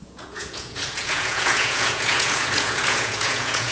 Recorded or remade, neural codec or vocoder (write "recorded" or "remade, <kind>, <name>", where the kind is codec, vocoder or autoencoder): remade, vocoder, Vocos